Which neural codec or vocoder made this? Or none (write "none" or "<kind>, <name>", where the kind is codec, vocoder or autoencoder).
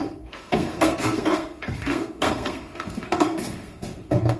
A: codec, SNAC